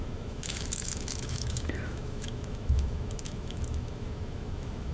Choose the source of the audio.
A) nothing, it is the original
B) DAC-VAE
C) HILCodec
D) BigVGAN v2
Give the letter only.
B